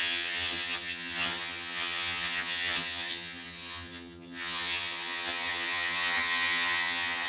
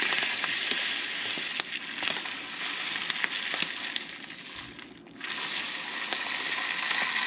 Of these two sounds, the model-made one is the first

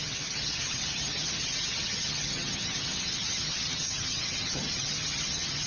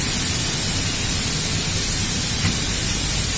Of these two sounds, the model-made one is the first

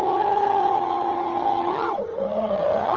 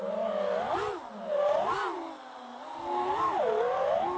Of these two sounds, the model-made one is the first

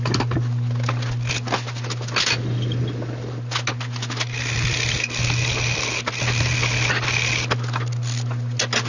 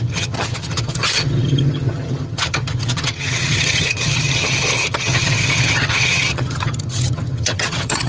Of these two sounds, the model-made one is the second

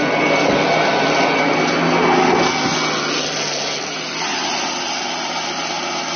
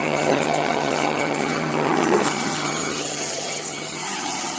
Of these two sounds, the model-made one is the second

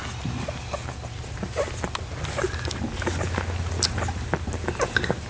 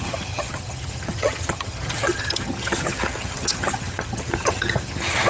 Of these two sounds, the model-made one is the second